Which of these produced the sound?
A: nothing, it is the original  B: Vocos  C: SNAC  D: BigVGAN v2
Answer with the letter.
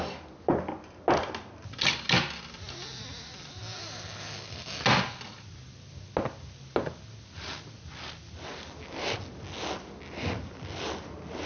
A